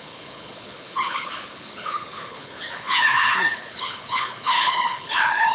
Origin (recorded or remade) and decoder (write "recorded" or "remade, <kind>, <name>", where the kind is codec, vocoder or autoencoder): remade, codec, HILCodec